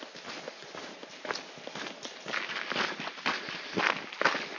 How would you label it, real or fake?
real